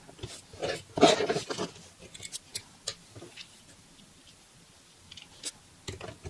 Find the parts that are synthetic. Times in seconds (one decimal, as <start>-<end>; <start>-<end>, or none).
none